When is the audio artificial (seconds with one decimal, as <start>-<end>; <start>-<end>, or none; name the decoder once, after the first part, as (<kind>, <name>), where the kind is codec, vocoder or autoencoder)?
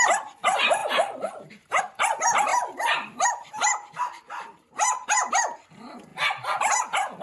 0.8-1.8 (vocoder, BigVGAN v2); 2.5-5.3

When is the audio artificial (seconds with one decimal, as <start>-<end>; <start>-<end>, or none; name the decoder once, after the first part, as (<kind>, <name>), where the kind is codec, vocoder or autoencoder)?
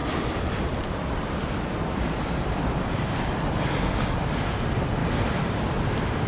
0.0-3.8 (vocoder, BigVGAN v2); 5.0-6.3